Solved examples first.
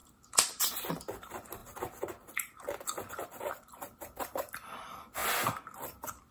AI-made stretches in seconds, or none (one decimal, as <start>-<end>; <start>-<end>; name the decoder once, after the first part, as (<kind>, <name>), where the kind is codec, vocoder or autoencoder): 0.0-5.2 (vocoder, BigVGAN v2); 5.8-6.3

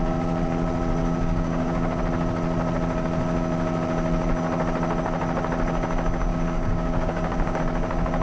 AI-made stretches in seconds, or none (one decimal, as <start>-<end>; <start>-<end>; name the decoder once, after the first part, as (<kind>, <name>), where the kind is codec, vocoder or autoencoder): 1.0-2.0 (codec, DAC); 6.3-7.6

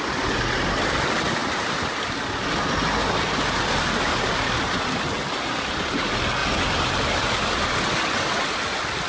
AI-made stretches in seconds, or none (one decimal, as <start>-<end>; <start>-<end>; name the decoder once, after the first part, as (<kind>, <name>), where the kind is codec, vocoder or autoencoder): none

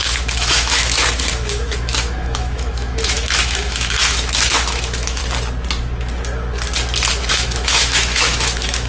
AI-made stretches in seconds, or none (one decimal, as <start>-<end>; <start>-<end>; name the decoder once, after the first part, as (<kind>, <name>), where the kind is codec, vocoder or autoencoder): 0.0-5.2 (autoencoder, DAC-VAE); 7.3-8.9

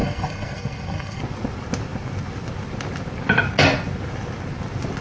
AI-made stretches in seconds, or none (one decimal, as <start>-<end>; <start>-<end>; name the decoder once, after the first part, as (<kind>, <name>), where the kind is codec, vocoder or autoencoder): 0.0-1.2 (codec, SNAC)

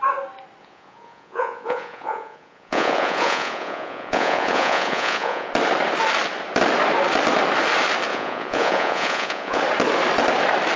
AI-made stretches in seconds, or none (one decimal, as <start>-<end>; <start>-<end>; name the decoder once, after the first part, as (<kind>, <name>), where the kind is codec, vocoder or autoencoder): 0.6-5.5 (vocoder, Vocos); 8.1-9.6

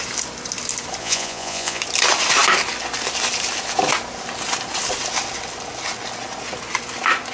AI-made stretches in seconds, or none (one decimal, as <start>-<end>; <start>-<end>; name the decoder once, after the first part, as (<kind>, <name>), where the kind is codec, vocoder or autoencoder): 1.0-1.8 (vocoder, Vocos)

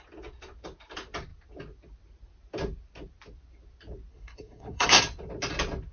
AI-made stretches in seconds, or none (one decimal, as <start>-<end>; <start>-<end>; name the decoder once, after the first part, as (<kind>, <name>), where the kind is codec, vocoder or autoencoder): 4.1-5.0 (codec, SNAC)